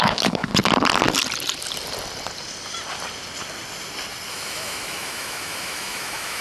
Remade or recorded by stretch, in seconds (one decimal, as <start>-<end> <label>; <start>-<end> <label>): 0.0-0.5 remade; 0.5-4.3 recorded; 4.3-6.4 remade